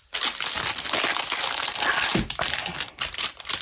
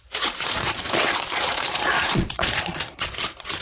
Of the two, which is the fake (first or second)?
second